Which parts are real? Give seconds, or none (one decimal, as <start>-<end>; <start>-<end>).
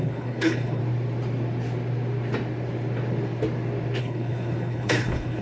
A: 0.8-4.0